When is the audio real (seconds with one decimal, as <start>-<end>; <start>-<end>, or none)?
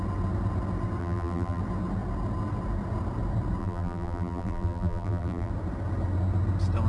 0.0-1.0; 1.6-3.6; 5.5-6.9